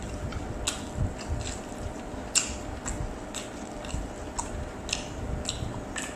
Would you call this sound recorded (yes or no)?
yes